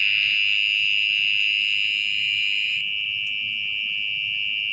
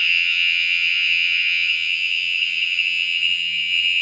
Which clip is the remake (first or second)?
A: second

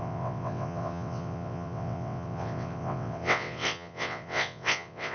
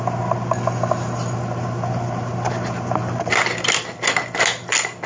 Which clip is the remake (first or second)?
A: first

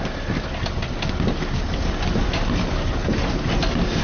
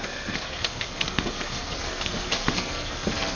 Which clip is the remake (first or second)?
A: second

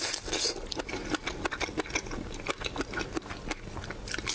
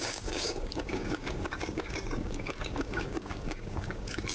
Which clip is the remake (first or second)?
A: second